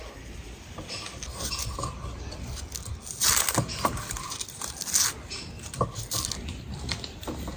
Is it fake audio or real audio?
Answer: real